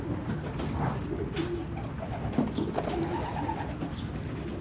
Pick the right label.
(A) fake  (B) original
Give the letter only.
B